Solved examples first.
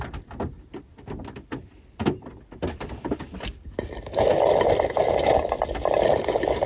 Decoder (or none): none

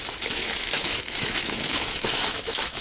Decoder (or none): autoencoder, DAC-VAE